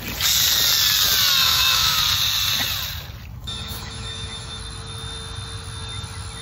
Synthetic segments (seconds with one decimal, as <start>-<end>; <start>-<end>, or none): 1.4-2.0; 3.3-4.6